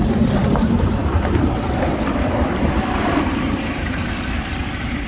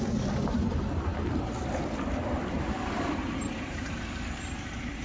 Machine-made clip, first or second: first